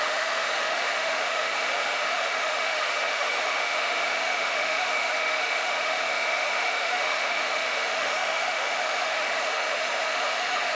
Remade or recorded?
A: remade